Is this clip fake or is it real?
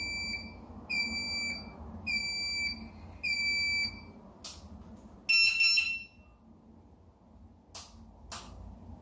real